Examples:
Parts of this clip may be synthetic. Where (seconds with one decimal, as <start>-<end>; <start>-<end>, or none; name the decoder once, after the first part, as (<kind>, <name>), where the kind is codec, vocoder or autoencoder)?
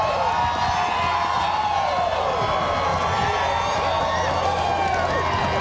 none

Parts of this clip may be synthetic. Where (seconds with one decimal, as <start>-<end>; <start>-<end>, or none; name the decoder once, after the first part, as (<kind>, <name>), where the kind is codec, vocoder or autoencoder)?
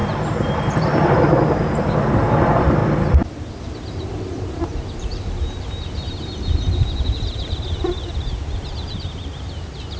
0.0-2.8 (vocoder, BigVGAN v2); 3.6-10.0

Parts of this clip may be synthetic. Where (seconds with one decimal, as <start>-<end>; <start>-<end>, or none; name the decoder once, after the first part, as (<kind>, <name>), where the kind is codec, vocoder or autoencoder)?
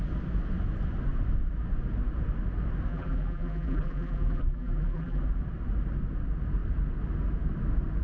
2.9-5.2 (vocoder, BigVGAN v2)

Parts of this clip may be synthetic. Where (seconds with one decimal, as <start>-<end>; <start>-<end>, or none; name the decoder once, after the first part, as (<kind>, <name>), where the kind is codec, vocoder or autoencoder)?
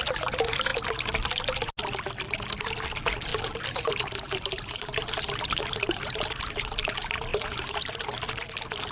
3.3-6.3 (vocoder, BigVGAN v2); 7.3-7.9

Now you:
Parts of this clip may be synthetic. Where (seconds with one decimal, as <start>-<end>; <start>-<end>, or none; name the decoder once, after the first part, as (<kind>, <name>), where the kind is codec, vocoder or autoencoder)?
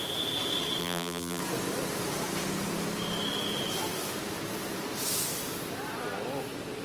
0.8-1.4 (vocoder, BigVGAN v2)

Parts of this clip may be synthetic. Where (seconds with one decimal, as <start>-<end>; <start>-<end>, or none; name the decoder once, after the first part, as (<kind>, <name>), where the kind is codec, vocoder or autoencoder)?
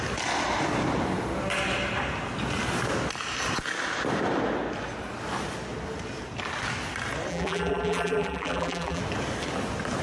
7.3-9.0 (vocoder, BigVGAN v2)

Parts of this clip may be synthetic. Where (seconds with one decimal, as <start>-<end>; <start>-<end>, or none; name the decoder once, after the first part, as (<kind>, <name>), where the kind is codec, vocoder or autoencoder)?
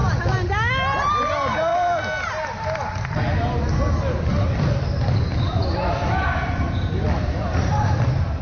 1.7-2.3 (vocoder, BigVGAN v2); 5.3-8.4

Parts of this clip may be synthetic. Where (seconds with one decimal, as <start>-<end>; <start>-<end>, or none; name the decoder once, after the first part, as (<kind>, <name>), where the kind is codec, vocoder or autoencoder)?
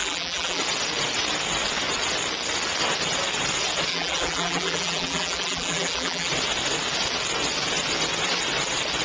0.0-0.6 (vocoder, BigVGAN v2); 3.9-6.3